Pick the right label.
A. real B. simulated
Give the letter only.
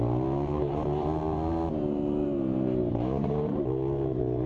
B